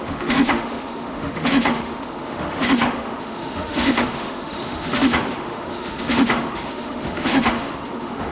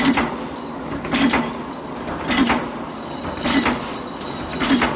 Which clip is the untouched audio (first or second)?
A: second